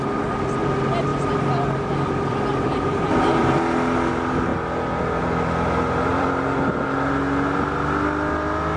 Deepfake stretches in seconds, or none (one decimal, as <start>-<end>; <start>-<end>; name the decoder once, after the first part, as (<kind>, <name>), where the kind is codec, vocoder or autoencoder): 1.1-4.1 (vocoder, BigVGAN v2); 6.1-6.7